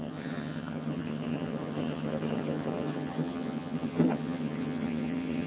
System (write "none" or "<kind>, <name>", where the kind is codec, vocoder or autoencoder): vocoder, HiFi-GAN